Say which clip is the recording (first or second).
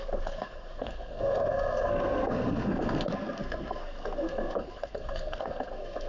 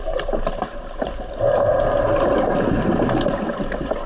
second